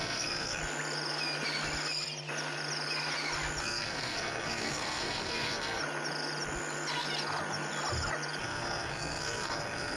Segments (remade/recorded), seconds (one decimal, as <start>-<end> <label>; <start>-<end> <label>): 0.0-0.6 remade; 0.6-3.6 recorded; 3.6-5.8 remade; 5.8-8.4 recorded; 8.4-10.0 remade